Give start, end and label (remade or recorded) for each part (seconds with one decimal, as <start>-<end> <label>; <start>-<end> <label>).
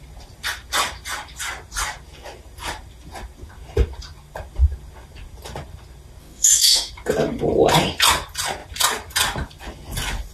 0.0-6.2 recorded; 6.2-6.9 remade; 6.9-10.3 recorded